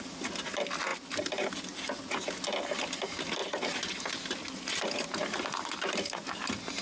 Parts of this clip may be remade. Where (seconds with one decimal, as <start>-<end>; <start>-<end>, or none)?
none